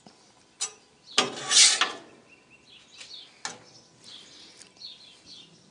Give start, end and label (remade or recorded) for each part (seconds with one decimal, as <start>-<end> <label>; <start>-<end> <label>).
0.0-5.7 recorded